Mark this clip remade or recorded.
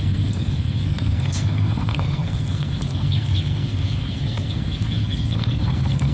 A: remade